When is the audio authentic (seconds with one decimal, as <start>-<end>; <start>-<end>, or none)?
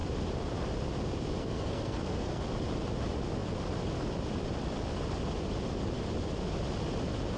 0.0-1.4; 2.4-7.4